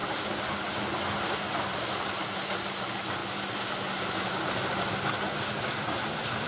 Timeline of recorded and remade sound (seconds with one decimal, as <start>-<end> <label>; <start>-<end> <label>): 0.0-6.5 recorded